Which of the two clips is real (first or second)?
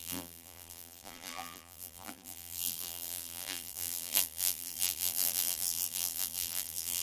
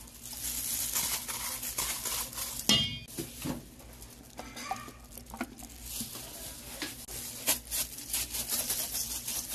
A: second